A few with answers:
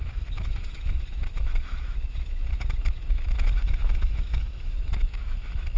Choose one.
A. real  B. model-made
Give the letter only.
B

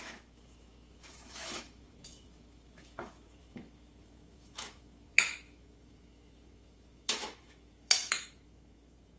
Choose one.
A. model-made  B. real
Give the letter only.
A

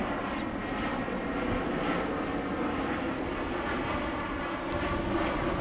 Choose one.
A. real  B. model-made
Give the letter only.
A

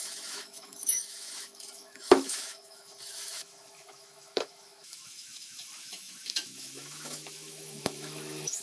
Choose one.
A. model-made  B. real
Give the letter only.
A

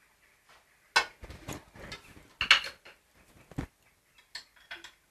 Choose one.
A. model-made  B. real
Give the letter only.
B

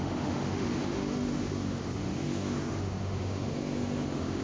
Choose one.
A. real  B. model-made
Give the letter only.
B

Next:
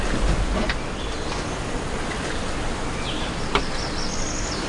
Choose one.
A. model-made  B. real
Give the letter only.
B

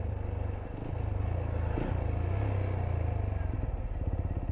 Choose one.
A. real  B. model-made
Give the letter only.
A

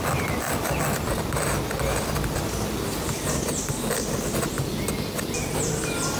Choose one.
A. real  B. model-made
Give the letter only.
A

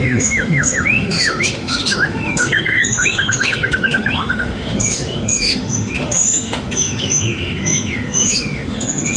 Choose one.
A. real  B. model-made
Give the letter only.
B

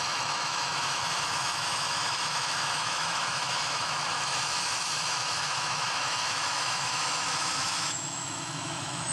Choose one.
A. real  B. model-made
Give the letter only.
B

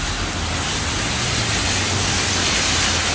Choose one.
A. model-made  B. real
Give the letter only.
B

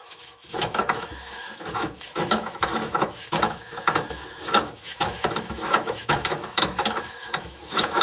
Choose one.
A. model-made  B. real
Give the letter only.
A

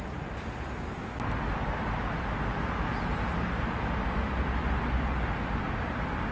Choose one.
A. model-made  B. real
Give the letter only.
B